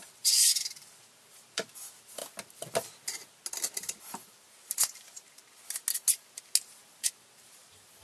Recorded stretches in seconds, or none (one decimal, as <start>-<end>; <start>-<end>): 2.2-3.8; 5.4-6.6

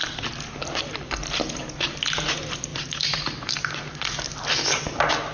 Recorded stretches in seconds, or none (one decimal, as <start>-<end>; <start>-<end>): 0.0-2.7; 3.4-5.3

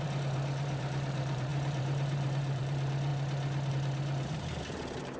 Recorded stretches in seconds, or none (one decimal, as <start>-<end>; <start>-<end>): 3.1-3.7